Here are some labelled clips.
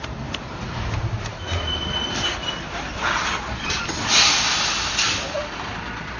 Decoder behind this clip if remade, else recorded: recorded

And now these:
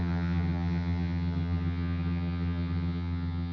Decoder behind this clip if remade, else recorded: remade, vocoder, HiFi-GAN